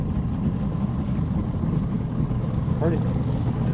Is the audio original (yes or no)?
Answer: yes